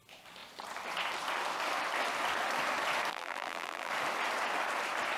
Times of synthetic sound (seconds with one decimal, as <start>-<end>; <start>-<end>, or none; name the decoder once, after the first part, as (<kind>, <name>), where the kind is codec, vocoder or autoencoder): 3.1-3.9 (vocoder, BigVGAN v2)